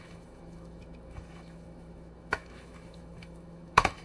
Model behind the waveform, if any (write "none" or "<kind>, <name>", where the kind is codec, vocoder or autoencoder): autoencoder, DAC-VAE